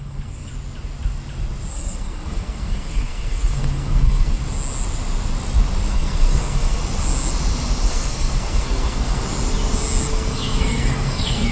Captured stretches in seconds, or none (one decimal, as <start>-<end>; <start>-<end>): 0.5-1.7; 4.4-5.9; 6.8-7.9; 9.2-10.1